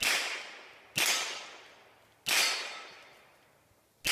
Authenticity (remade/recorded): recorded